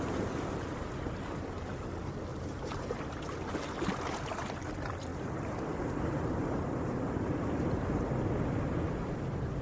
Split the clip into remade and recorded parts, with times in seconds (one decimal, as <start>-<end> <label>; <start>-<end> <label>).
0.0-2.3 recorded; 2.3-2.8 remade; 2.8-5.1 recorded; 5.1-7.9 remade; 7.9-9.6 recorded